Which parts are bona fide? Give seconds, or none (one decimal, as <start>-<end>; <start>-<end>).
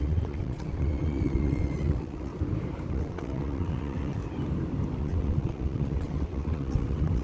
2.3-2.9; 4.2-5.0